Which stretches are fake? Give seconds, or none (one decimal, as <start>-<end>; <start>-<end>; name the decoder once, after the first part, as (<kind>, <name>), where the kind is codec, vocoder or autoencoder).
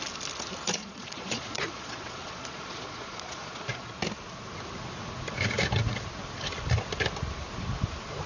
0.8-3.8 (vocoder, Vocos)